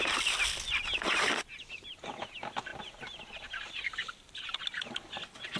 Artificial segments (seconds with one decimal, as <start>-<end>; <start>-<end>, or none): none